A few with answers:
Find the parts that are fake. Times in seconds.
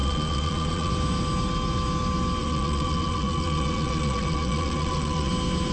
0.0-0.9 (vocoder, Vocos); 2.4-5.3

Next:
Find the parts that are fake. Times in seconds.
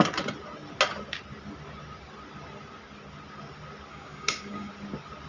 3.9-4.7 (codec, DAC)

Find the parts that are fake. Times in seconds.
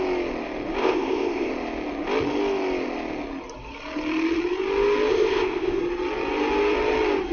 0.8-1.5 (codec, ZipCodec); 5.1-5.8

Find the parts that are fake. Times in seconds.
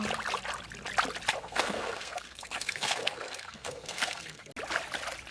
1.4-4.5 (codec, SNAC)